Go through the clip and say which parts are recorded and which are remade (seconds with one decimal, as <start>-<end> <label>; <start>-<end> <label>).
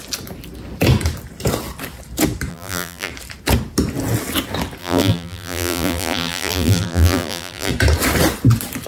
0.0-2.5 recorded; 2.5-3.1 remade; 3.1-4.8 recorded; 4.8-7.7 remade; 7.7-8.9 recorded